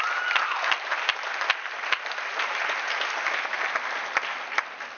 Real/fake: real